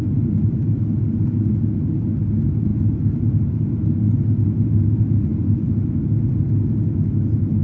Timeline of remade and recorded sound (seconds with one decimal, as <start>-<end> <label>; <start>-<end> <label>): 0.0-7.6 recorded